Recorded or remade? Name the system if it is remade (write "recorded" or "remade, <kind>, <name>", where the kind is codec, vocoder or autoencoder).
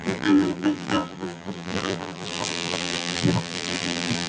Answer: remade, vocoder, BigVGAN v2